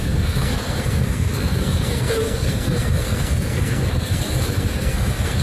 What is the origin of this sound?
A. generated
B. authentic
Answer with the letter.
A